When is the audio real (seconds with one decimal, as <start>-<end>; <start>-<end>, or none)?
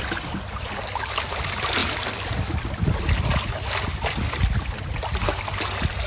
0.0-6.1